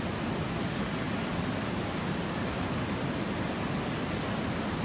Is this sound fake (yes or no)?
no